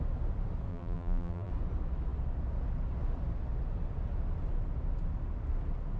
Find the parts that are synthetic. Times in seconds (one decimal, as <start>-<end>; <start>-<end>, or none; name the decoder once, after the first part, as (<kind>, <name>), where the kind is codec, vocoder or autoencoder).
0.7-1.5 (vocoder, BigVGAN v2)